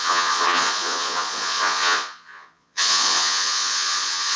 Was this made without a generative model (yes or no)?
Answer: no